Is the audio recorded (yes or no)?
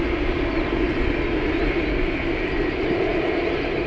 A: yes